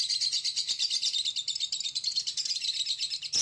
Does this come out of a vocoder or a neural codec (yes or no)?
no